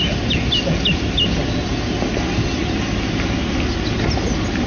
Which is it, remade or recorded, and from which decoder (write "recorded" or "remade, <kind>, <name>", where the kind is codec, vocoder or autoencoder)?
recorded